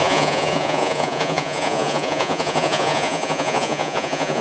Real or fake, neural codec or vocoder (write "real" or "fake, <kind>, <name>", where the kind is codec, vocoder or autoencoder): fake, vocoder, Vocos